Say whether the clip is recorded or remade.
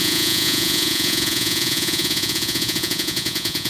remade